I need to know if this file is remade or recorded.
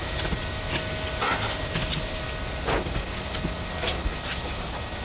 recorded